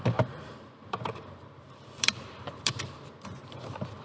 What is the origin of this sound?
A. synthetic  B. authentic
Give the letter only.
A